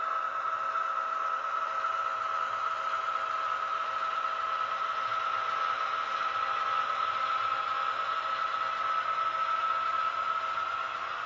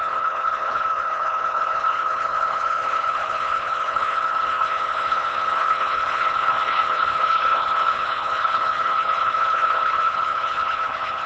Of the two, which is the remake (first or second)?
second